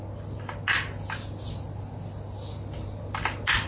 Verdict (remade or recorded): recorded